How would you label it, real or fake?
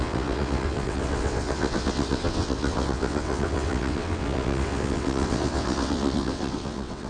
fake